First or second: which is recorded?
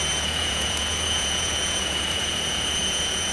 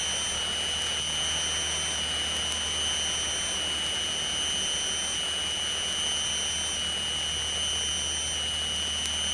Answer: second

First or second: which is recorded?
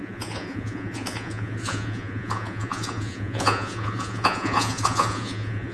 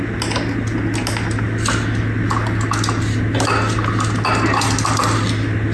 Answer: second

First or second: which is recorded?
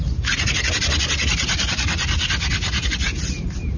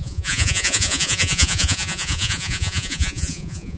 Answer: first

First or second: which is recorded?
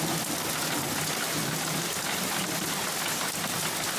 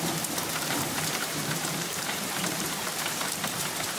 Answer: first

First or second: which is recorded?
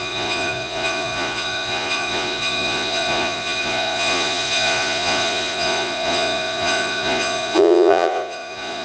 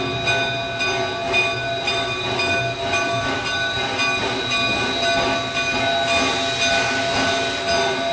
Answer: second